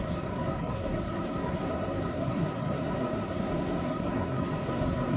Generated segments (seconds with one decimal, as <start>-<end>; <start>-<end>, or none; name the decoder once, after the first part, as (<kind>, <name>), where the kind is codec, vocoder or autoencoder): 0.0-5.2 (codec, SNAC)